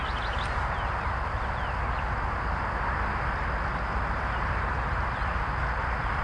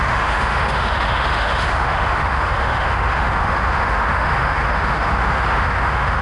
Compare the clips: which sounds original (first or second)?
first